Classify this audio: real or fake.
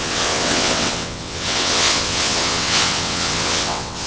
fake